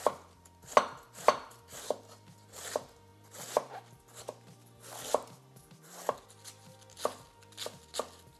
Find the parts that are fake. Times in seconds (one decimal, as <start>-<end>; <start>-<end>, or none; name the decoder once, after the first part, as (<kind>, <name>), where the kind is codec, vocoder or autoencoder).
none